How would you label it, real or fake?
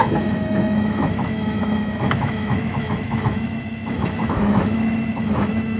fake